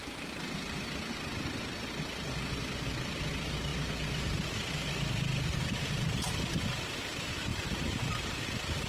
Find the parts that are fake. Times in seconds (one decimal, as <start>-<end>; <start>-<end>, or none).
0.0-1.0; 5.5-6.7; 7.5-8.9